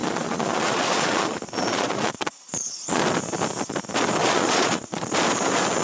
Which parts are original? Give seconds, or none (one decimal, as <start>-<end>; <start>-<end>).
3.0-4.2; 5.1-5.8